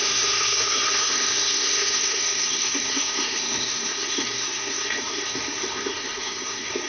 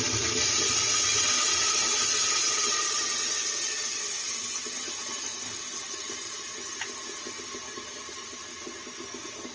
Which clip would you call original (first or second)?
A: second